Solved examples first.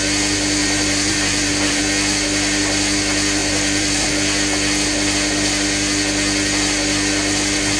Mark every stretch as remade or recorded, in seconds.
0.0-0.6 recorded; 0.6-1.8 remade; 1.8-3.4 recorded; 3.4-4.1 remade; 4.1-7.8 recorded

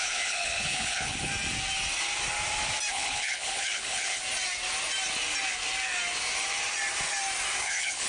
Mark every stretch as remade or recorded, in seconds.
0.0-1.3 remade; 1.3-2.9 recorded; 2.9-4.2 remade; 4.2-7.6 recorded; 7.6-8.1 remade

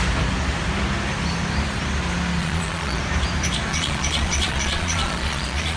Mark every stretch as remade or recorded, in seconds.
0.0-2.4 recorded; 2.4-3.0 remade; 3.0-3.7 recorded; 3.7-5.8 remade

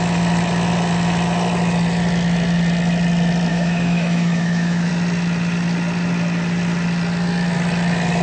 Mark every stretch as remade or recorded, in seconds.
0.0-3.5 recorded; 3.5-4.9 remade; 4.9-8.2 recorded

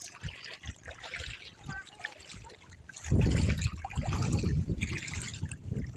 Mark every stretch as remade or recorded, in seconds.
0.0-6.0 recorded